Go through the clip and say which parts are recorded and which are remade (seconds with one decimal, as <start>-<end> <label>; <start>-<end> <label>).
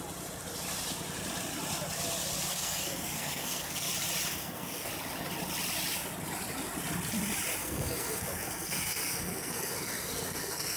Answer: 0.0-2.5 recorded; 2.5-3.9 remade; 3.9-4.3 recorded; 4.3-4.9 remade; 4.9-7.6 recorded; 7.6-10.8 remade